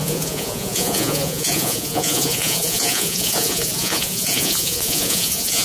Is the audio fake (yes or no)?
yes